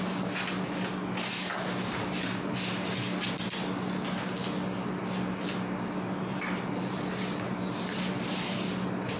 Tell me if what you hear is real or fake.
real